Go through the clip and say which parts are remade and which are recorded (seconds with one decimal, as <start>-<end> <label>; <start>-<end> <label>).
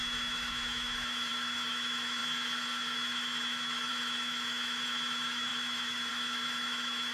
0.0-7.1 remade